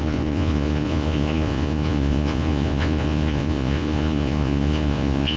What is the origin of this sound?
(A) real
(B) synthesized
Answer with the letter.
B